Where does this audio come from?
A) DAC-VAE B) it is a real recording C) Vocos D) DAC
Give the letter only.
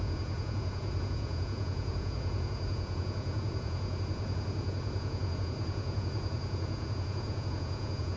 C